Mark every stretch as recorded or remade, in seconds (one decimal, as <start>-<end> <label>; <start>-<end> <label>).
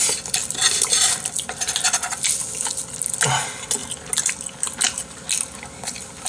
0.0-0.4 recorded; 0.4-1.6 remade; 1.6-3.8 recorded; 3.8-4.3 remade; 4.3-6.3 recorded